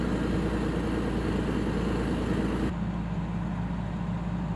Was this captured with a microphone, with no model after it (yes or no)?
yes